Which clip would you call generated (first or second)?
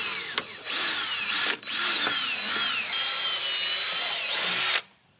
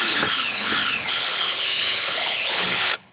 second